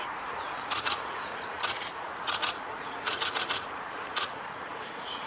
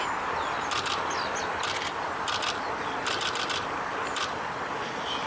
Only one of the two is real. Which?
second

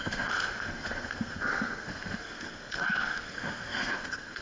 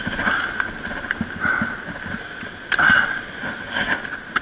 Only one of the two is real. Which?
second